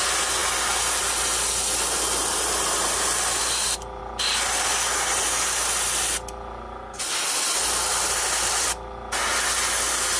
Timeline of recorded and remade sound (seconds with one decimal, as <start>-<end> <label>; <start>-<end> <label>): 0.0-10.2 recorded